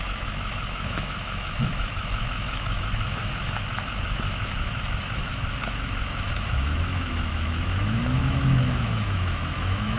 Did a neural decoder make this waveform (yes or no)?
yes